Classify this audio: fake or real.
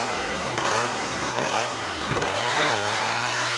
fake